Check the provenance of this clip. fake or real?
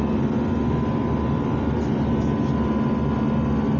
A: real